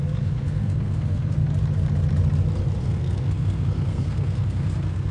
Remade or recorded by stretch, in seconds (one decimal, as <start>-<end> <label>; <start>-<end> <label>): 0.0-1.4 remade; 1.4-2.8 recorded; 2.8-5.1 remade

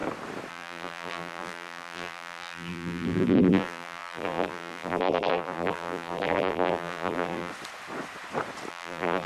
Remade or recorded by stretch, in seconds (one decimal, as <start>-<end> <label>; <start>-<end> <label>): 0.0-0.5 recorded; 0.5-7.5 remade; 7.5-8.7 recorded; 8.7-9.3 remade

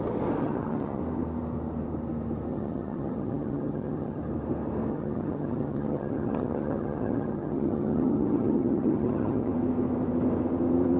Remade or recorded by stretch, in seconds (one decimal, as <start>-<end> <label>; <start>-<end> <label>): 0.0-0.4 recorded; 0.4-1.0 remade; 1.0-2.5 recorded; 2.5-4.2 remade; 4.2-4.9 recorded; 4.9-9.5 remade; 9.5-11.0 recorded

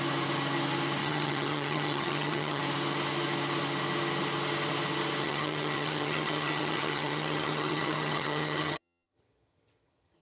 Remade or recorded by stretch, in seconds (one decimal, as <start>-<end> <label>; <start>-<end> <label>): 0.0-1.0 recorded; 1.0-2.6 remade; 2.6-5.2 recorded; 5.2-10.2 remade